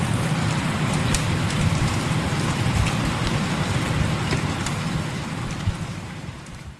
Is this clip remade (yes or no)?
yes